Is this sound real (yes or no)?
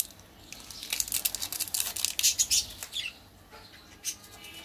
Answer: yes